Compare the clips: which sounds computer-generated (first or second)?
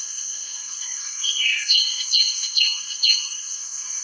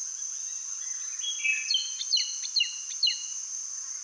first